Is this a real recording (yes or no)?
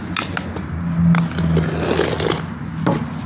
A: yes